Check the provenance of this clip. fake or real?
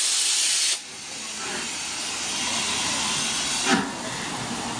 real